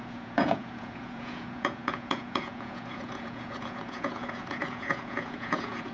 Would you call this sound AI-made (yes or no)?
yes